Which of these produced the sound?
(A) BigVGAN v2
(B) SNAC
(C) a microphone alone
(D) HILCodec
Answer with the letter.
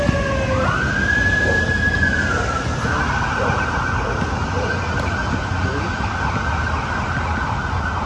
C